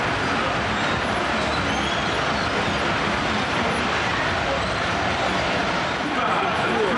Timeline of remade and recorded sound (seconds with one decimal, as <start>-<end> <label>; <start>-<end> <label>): 0.0-1.2 recorded; 1.2-4.9 remade; 4.9-5.6 recorded; 5.6-6.1 remade; 6.1-7.0 recorded